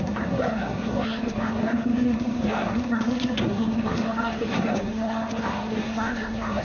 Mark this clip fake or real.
fake